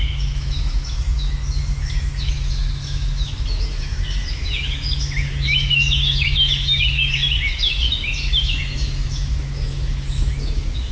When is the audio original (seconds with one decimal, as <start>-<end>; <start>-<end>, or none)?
none